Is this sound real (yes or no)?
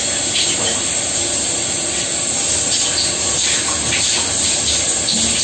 yes